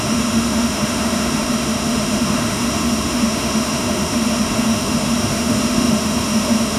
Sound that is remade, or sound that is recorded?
remade